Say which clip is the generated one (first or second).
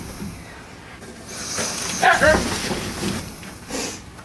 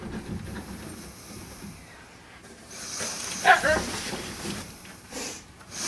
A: second